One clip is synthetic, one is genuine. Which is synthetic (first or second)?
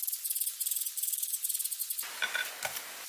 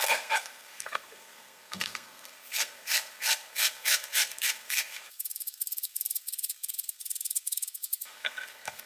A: second